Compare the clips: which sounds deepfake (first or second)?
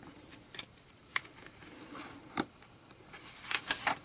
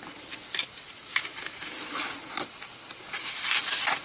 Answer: first